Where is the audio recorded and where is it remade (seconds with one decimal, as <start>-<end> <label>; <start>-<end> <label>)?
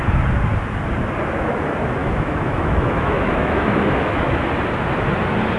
0.0-2.0 recorded; 2.0-4.4 remade; 4.4-5.6 recorded